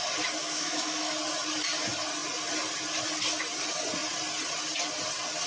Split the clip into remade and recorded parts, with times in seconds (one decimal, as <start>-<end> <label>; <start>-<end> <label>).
0.0-0.4 recorded; 0.4-1.1 remade; 1.1-5.5 recorded